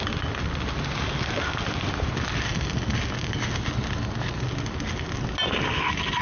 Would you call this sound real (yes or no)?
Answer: yes